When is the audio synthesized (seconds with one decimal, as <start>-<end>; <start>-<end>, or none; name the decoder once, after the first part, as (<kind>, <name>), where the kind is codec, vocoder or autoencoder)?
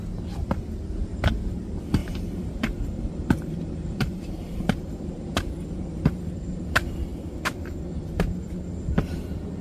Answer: 2.0-5.0 (vocoder, BigVGAN v2)